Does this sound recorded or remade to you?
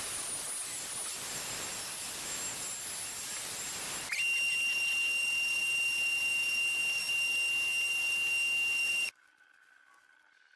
recorded